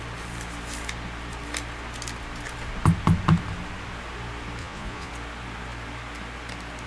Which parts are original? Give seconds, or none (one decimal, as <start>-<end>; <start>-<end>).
0.0-4.6; 5.1-6.9